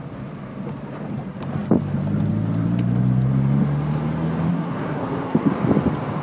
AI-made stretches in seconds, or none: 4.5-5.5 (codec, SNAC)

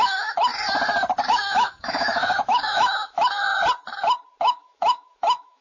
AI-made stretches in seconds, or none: 0.0-0.5 (autoencoder, DAC-VAE); 1.3-3.5; 4.4-5.6

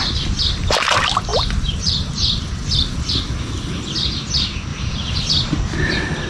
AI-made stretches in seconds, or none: 1.3-3.1 (vocoder, BigVGAN v2); 4.7-5.6

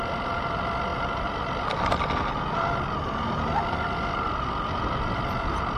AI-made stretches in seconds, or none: none

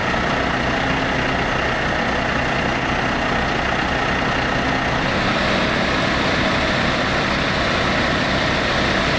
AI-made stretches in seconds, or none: none